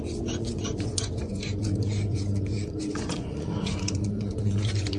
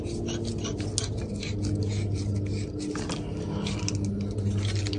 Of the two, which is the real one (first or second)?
second